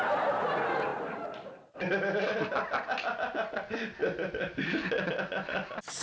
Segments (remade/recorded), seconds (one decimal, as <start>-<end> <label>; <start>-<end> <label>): 0.0-6.0 recorded